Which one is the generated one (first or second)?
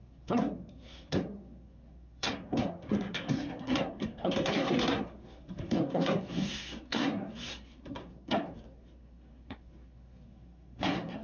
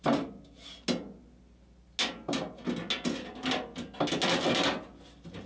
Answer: first